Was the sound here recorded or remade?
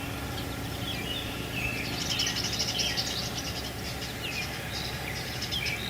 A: recorded